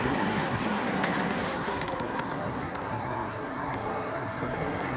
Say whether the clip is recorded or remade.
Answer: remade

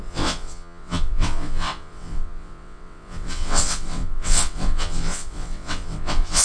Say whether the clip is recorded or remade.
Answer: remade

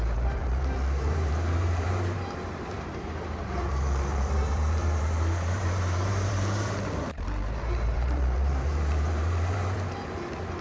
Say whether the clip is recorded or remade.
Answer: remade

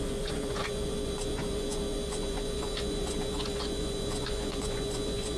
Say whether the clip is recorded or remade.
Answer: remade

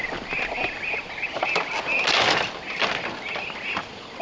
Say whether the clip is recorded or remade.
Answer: recorded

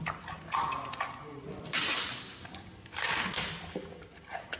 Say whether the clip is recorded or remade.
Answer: recorded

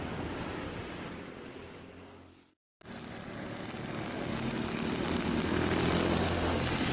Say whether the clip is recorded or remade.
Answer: recorded